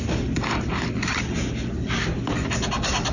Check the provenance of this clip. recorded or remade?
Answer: recorded